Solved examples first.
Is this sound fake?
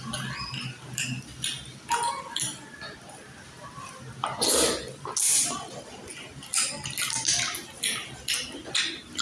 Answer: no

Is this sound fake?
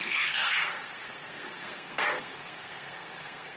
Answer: yes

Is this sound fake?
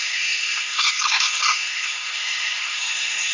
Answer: yes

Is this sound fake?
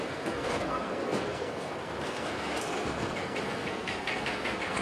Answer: yes